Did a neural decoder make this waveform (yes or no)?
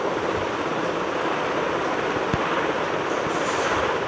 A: no